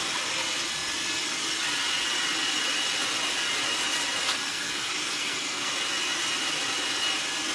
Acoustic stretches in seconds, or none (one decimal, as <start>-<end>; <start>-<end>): 0.0-4.5; 5.7-7.5